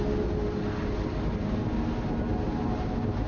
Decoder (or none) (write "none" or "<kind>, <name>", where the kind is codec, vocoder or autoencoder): none